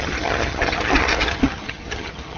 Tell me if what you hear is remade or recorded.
remade